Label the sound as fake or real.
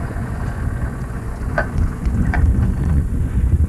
fake